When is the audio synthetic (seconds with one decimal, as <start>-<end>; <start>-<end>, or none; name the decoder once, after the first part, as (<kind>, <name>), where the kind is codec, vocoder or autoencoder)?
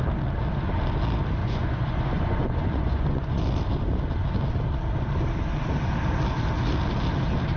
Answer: 1.4-3.4 (vocoder, Vocos)